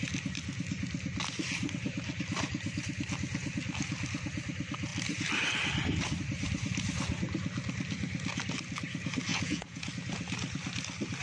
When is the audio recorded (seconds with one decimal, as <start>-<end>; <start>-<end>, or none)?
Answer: 0.0-9.3; 9.9-11.2